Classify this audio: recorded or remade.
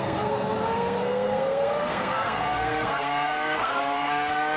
remade